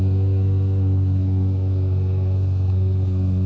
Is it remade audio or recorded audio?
remade